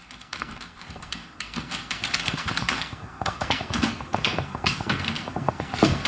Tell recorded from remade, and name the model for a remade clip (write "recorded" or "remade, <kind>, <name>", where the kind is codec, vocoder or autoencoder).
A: remade, codec, SNAC